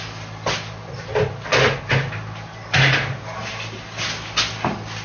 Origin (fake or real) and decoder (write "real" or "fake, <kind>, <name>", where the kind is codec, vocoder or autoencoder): real